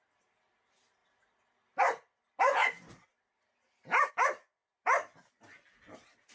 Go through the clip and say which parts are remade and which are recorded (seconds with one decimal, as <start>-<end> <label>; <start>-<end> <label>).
0.0-6.3 recorded